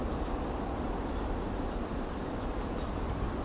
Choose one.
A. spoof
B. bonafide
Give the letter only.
B